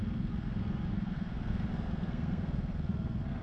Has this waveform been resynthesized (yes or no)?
yes